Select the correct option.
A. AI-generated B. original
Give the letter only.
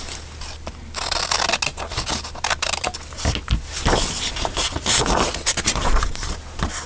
B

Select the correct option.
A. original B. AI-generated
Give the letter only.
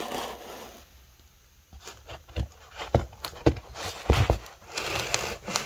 A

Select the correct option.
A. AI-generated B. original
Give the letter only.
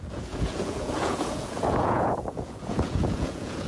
A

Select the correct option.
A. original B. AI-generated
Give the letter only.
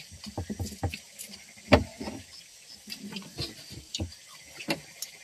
A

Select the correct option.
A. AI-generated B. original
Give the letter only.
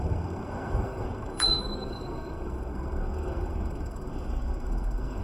A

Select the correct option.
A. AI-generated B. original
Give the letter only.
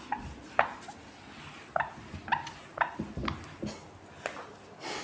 B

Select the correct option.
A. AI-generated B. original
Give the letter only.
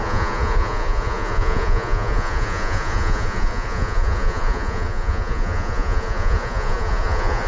A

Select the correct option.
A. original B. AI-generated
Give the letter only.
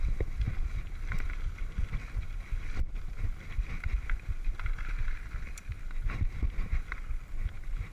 B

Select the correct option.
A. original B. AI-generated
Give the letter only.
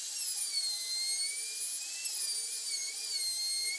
A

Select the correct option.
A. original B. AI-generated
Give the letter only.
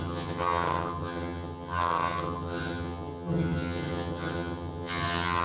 B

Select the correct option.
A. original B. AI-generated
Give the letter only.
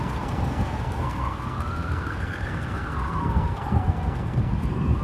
B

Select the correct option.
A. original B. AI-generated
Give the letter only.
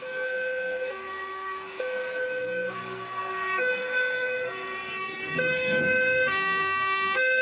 B